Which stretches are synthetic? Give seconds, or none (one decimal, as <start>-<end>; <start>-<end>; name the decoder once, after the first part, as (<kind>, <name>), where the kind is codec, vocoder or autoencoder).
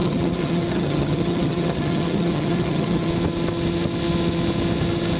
0.0-3.1 (vocoder, HiFi-GAN)